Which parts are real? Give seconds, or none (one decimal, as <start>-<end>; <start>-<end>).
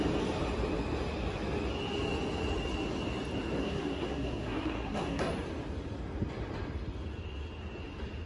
0.0-3.6; 5.3-8.3